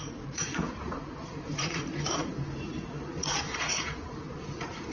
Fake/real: fake